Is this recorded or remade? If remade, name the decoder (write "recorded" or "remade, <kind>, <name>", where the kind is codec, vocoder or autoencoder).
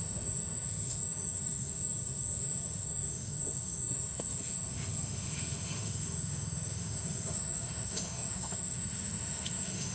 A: remade, autoencoder, DAC-VAE